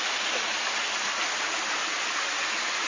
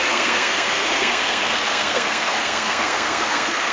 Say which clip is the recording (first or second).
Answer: first